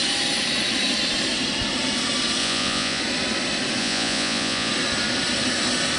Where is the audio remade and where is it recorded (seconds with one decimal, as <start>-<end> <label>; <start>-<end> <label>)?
0.0-2.4 recorded; 2.4-3.0 remade; 3.0-3.8 recorded; 3.8-4.7 remade; 4.7-6.0 recorded